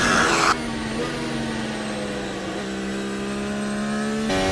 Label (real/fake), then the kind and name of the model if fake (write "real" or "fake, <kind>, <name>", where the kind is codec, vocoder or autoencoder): real